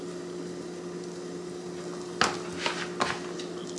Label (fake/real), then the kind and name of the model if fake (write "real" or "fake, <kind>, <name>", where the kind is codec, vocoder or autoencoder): real